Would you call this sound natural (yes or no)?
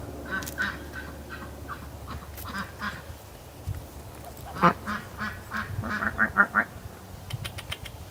yes